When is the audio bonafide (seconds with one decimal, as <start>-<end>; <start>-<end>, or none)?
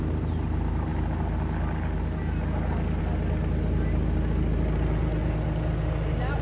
0.0-6.4